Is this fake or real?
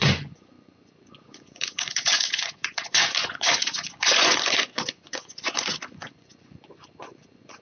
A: fake